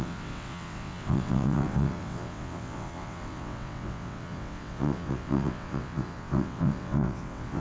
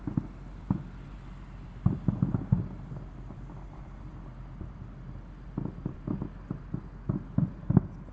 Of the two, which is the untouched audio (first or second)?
second